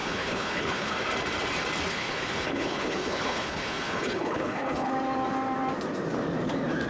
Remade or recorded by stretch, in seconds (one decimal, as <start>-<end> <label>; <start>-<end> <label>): 0.0-0.9 remade; 0.9-1.9 recorded; 1.9-4.9 remade; 4.9-6.9 recorded